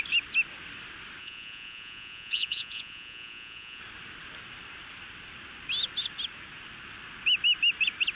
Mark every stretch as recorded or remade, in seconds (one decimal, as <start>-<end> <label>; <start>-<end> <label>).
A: 0.0-1.2 recorded; 1.2-3.8 remade; 3.8-8.1 recorded